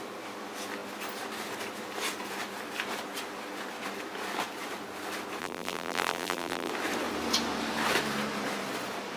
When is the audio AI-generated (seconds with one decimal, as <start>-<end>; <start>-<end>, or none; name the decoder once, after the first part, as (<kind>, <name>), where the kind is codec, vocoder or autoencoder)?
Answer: 5.4-6.7 (vocoder, BigVGAN v2)